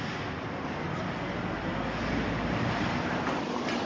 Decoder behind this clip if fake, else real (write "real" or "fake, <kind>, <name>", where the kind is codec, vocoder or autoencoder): real